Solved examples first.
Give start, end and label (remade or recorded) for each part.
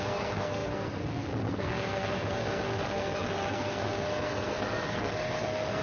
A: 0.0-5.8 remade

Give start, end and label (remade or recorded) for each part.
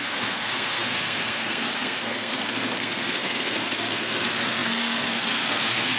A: 0.0-6.0 remade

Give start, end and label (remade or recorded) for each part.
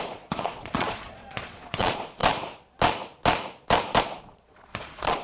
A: 0.0-2.2 remade; 2.2-4.0 recorded; 4.0-5.2 remade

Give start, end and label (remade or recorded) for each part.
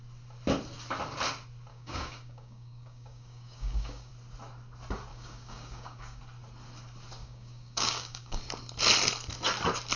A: 0.0-1.7 recorded; 1.7-4.1 remade; 4.1-5.1 recorded; 5.1-6.2 remade; 6.2-7.2 recorded; 7.2-8.4 remade; 8.4-10.0 recorded